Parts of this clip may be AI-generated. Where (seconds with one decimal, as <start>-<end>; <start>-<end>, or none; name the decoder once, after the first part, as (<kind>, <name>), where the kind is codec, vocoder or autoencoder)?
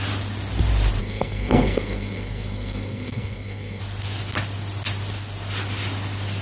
1.0-3.8 (codec, SNAC)